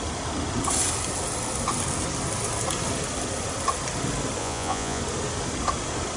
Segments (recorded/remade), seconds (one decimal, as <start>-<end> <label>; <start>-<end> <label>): 0.0-4.4 recorded; 4.4-5.0 remade; 5.0-6.2 recorded